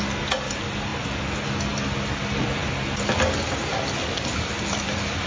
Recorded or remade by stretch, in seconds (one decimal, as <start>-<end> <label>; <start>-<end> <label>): 0.0-5.3 recorded